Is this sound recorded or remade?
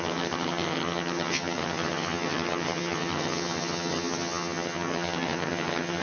remade